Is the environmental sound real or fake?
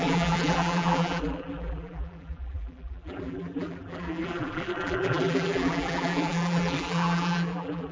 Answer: fake